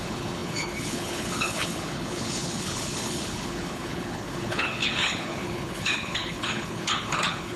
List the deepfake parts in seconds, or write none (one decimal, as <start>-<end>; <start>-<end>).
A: 0.0-7.6